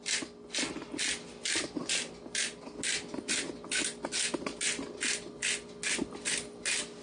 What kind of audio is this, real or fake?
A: real